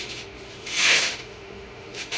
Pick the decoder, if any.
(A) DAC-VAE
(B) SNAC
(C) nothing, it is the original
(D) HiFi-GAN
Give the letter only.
A